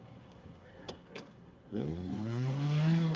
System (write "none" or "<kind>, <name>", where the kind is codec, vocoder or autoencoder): codec, SNAC